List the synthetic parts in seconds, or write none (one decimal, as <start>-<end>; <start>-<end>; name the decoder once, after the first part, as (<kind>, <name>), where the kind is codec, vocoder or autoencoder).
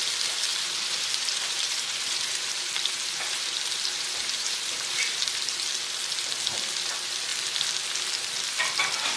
0.5-5.6 (vocoder, BigVGAN v2)